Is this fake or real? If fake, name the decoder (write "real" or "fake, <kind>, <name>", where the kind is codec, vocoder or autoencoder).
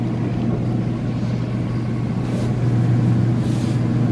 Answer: real